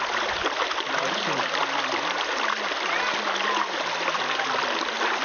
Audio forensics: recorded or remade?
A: recorded